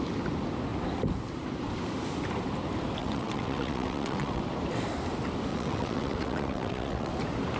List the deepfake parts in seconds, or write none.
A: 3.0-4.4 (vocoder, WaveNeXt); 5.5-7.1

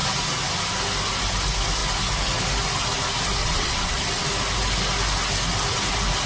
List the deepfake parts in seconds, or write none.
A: 3.4-4.3 (vocoder, WaveNeXt)

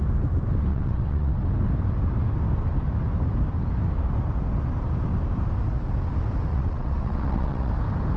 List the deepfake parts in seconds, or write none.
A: 0.7-1.3 (vocoder, WaveNeXt); 6.5-7.7

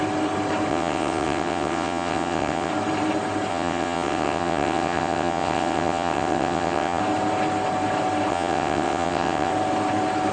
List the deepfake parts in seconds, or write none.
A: 0.7-2.7 (vocoder, WaveNeXt); 3.5-7.0; 8.3-9.5

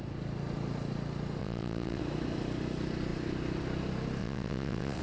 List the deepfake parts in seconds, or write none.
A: 1.4-2.0 (vocoder, WaveNeXt); 4.2-5.0